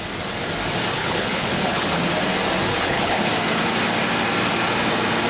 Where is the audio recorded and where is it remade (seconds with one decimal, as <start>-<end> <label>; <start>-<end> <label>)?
0.0-1.0 recorded; 1.0-2.1 remade; 2.1-2.7 recorded; 2.7-3.3 remade; 3.3-5.3 recorded